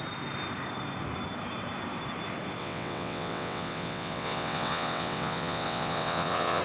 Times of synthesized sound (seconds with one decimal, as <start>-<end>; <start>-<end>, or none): 2.6-6.6